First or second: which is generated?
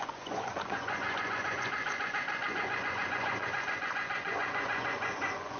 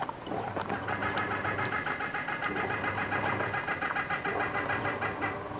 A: first